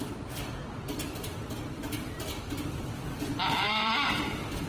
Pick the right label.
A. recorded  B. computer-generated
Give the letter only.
B